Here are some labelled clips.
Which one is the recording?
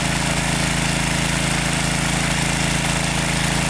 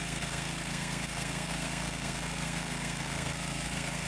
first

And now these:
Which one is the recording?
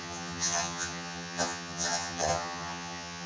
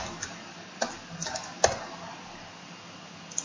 second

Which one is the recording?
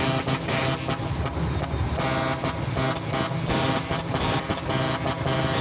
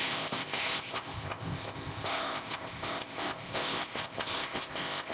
first